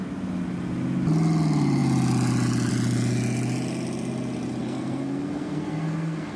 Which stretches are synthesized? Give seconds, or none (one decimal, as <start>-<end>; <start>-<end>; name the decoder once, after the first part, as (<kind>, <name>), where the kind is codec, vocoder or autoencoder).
4.6-6.4 (codec, SNAC)